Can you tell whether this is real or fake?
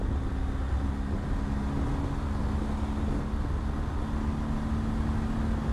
real